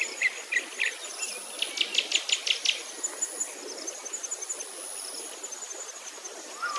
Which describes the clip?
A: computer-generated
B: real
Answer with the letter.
B